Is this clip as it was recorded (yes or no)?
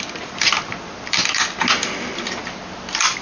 yes